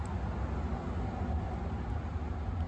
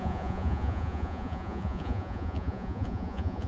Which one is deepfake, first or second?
second